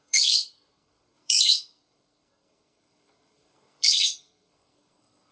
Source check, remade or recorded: remade